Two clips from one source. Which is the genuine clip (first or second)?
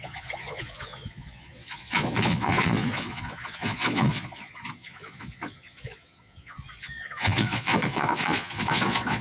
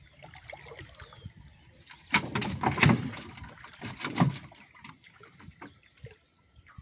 second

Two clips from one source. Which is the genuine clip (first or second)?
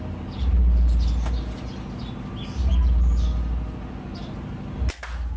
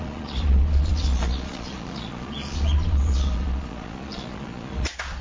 first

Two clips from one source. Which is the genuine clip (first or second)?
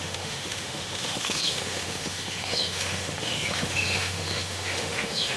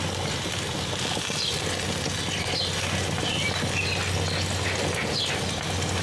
second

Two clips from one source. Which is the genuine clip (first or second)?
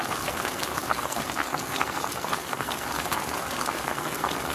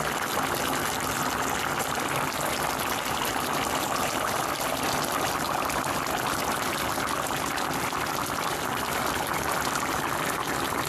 second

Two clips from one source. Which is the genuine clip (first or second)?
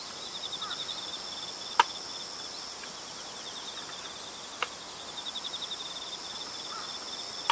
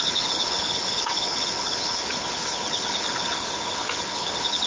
first